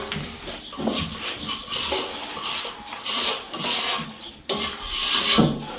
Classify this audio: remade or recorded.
recorded